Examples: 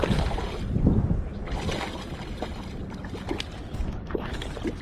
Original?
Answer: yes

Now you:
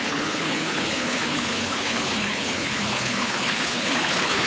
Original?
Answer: no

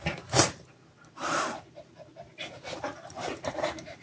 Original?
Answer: yes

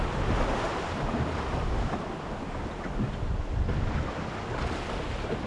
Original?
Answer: yes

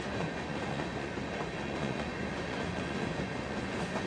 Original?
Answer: no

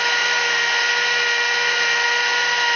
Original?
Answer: yes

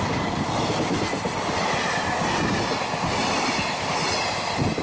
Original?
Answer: yes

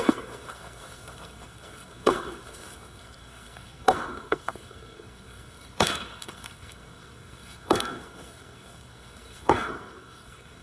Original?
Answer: no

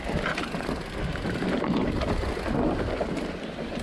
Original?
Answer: yes